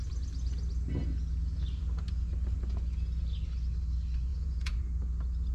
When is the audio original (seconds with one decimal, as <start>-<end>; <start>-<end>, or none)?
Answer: 0.0-4.3; 4.8-5.5